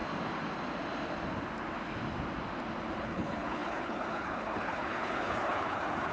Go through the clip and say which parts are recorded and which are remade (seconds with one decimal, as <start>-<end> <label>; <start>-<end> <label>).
0.0-3.0 recorded; 3.0-6.1 remade